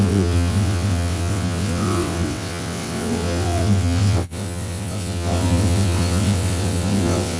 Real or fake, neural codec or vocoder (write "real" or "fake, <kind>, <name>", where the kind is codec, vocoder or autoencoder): fake, vocoder, WaveNeXt